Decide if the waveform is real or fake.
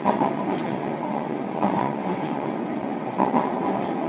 fake